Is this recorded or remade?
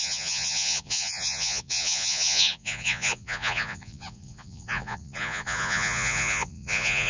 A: remade